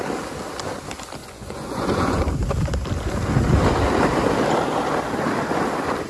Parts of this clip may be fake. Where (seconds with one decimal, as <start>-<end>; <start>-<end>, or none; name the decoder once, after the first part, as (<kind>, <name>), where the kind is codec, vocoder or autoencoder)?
1.2-2.2 (vocoder, Vocos)